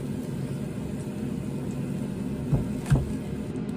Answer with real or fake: real